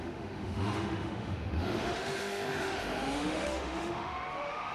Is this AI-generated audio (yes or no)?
yes